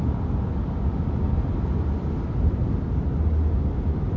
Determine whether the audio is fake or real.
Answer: real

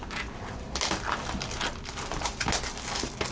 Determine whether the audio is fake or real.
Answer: real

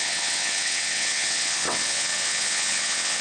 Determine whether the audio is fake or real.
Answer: fake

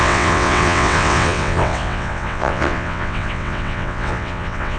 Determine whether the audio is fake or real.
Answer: fake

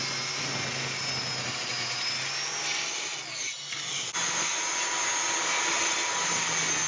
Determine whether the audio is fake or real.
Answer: real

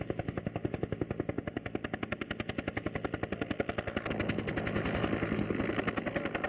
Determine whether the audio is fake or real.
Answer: real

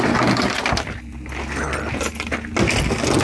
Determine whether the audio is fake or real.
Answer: real